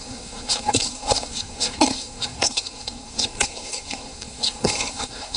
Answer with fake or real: fake